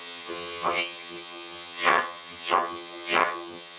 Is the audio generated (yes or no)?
yes